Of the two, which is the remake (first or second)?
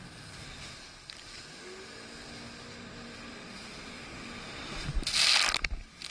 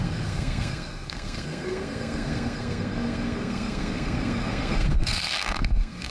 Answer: second